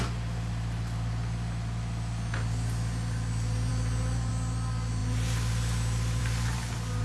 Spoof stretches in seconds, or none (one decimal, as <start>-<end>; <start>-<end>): none